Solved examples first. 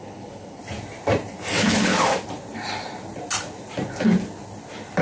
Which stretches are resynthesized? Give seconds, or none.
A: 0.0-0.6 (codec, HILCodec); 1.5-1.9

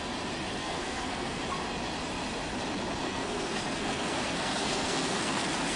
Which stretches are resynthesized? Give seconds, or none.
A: 0.6-1.4 (codec, SNAC); 3.0-5.8

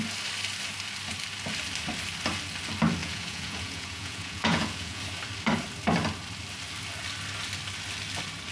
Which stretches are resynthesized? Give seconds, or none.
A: 3.0-5.0 (vocoder, Vocos)

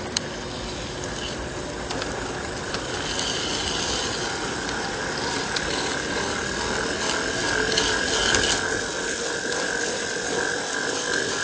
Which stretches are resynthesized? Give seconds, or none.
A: none

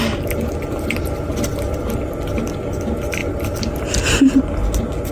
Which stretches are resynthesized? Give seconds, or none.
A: none